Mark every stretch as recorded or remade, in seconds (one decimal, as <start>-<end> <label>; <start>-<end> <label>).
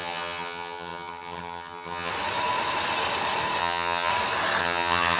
0.0-2.1 remade; 2.1-3.6 recorded; 3.6-4.1 remade; 4.1-4.6 recorded; 4.6-5.2 remade